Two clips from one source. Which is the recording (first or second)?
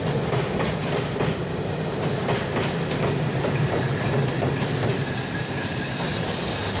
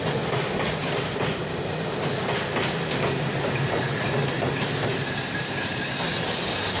second